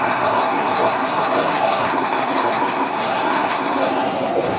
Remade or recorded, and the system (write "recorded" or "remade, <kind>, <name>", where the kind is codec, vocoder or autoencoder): remade, codec, SNAC